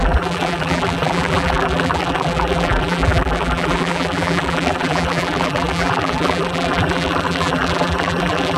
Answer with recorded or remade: remade